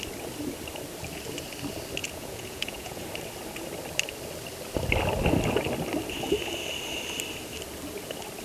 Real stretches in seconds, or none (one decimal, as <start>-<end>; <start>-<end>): 0.0-2.0; 3.0-8.4